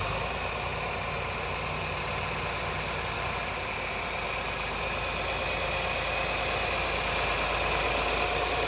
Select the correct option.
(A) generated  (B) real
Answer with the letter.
B